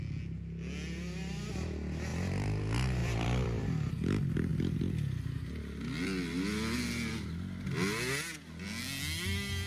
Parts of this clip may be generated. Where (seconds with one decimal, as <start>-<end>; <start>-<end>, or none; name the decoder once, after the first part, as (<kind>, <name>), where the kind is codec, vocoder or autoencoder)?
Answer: 2.1-2.6 (vocoder, BigVGAN v2); 3.0-3.9